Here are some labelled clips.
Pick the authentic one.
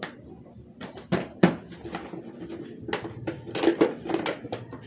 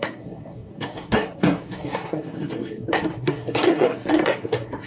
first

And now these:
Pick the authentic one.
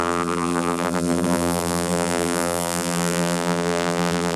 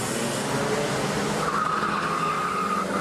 second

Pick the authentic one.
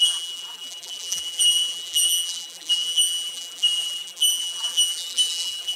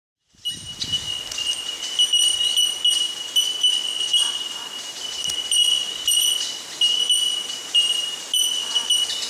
second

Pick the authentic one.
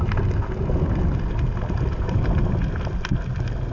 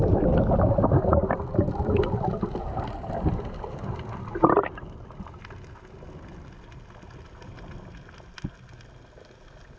second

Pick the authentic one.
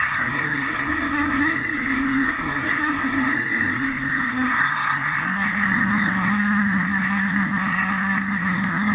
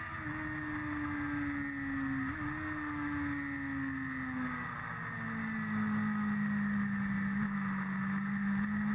second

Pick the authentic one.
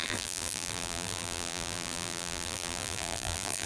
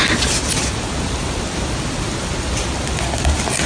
second